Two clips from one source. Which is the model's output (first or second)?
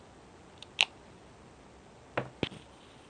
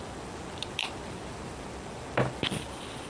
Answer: second